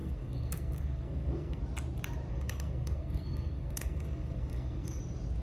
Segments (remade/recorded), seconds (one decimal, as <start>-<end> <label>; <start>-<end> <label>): 0.0-1.6 remade; 1.6-2.3 recorded; 2.3-5.0 remade; 5.0-5.4 recorded